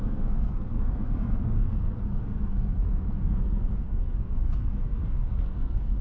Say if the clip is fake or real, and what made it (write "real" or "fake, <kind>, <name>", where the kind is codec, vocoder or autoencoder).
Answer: fake, codec, SNAC